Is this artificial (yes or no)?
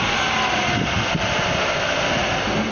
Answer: no